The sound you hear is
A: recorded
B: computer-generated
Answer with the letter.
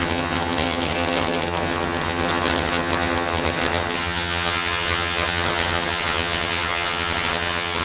B